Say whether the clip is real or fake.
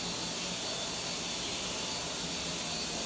real